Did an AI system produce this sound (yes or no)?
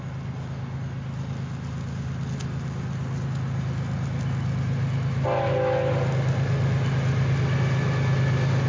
no